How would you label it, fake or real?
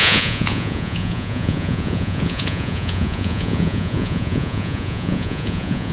fake